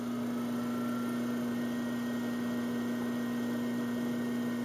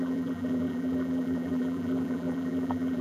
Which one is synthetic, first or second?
second